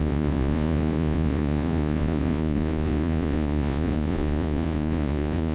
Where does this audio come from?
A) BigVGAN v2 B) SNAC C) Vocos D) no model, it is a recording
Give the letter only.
C